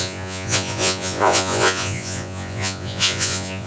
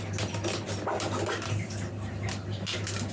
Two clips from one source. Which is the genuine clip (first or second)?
second